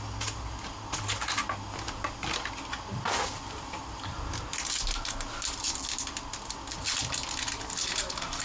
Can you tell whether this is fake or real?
real